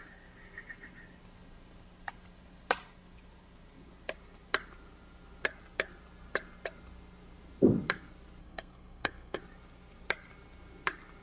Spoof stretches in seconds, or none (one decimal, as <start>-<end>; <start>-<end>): 8.4-9.4

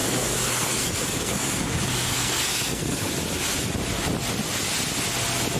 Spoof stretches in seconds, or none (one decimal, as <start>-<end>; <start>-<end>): 0.0-3.1

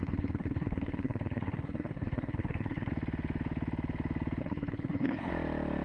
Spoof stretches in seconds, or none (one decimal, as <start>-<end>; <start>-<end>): 0.0-2.9; 4.4-5.3

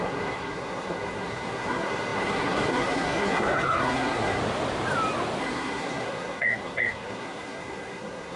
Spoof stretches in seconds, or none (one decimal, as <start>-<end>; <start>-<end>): 0.0-4.4; 5.4-8.4

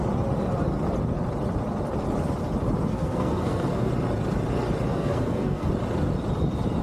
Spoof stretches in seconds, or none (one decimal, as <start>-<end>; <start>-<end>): 2.9-3.9; 4.9-5.7

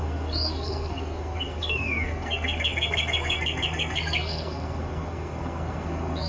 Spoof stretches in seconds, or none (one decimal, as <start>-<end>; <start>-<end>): 0.0-6.3

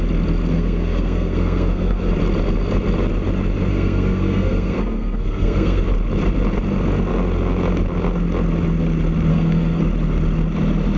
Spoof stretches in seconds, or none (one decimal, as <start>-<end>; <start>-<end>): 0.5-2.1; 3.7-5.8; 9.3-9.8

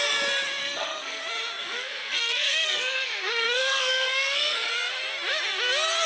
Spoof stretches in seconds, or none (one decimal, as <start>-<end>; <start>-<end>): 0.6-1.2; 1.6-4.7